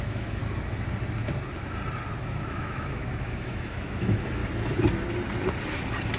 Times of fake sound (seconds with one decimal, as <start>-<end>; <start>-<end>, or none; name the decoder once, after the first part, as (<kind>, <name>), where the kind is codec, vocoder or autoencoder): 0.0-0.4 (autoencoder, DAC-VAE); 2.2-4.4